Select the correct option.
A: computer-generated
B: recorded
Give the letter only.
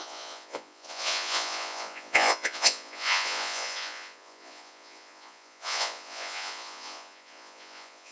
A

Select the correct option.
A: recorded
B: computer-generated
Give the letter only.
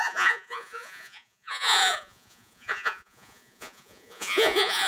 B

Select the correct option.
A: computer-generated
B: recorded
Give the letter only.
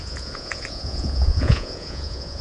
A